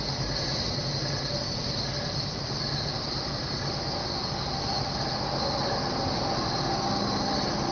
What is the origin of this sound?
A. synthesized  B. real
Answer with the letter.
B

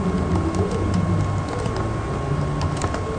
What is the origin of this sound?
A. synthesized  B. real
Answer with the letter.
B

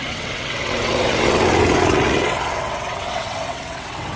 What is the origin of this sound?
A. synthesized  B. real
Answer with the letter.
A